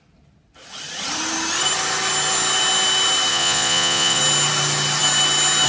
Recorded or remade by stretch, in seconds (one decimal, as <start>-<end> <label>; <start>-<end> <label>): 0.0-3.3 recorded; 3.3-4.2 remade; 4.2-5.7 recorded

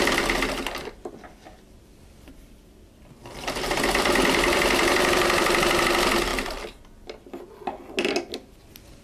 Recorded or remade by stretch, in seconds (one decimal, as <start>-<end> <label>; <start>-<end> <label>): 0.0-0.8 recorded; 0.8-5.8 remade; 5.8-9.0 recorded

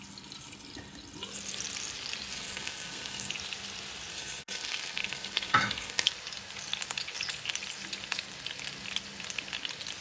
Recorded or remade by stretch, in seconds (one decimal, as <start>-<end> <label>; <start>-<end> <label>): 0.0-2.3 recorded; 2.3-3.3 remade; 3.3-4.1 recorded; 4.1-6.1 remade; 6.1-10.0 recorded